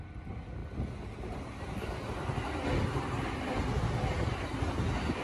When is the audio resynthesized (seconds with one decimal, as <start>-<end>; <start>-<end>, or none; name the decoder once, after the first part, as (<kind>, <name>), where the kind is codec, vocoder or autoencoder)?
none